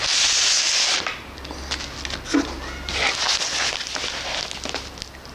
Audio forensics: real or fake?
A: real